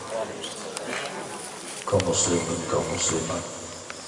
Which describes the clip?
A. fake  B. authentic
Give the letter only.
B